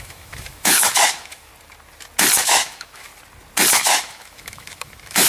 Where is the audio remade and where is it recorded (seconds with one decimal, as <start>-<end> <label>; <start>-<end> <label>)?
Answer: 0.0-1.5 remade; 1.5-2.4 recorded; 2.4-3.1 remade; 3.1-3.7 recorded; 3.7-5.3 remade